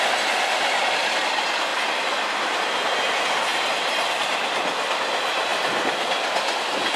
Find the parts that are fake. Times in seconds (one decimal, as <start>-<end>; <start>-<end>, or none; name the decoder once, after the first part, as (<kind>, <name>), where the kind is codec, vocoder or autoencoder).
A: 1.7-2.6 (vocoder, BigVGAN v2); 3.5-5.0